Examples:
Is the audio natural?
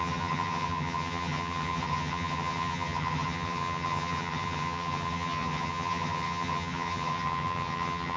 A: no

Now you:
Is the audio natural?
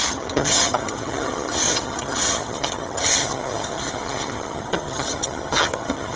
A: no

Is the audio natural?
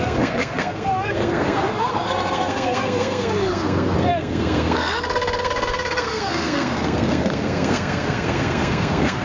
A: no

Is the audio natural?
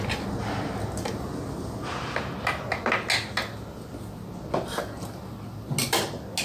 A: yes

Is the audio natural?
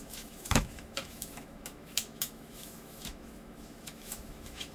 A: no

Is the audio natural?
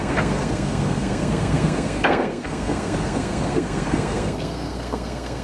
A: no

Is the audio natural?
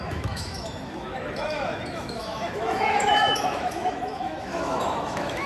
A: no